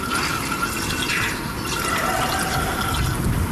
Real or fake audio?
real